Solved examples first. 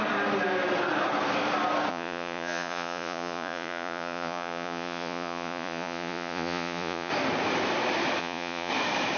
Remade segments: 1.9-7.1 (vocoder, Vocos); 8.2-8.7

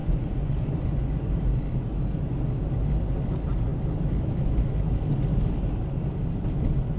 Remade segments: 0.0-1.3 (vocoder, Vocos)